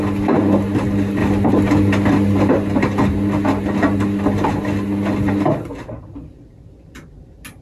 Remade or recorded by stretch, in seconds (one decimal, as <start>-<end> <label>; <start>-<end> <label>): 0.0-7.6 recorded